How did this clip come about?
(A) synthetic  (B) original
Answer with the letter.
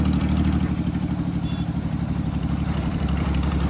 A